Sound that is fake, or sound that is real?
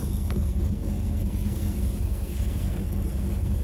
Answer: fake